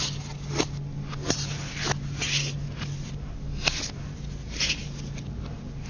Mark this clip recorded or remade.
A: recorded